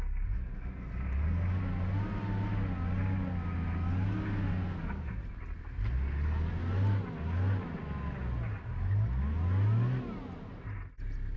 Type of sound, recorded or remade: recorded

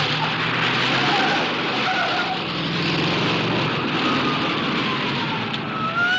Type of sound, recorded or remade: recorded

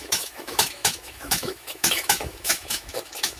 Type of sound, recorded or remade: remade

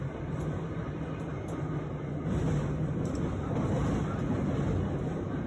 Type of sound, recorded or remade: recorded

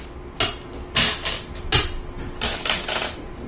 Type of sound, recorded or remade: recorded